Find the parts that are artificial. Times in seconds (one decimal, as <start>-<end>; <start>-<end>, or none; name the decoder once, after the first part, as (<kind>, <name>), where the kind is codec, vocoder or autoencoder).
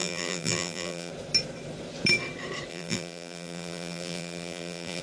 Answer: 0.0-1.1 (vocoder, BigVGAN v2); 2.7-5.0